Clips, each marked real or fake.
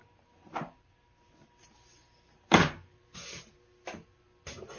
real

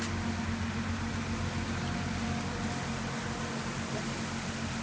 real